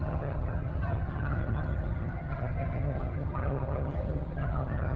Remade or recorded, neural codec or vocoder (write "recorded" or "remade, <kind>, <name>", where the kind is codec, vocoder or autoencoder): remade, vocoder, HiFi-GAN